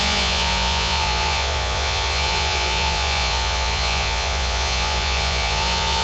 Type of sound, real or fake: fake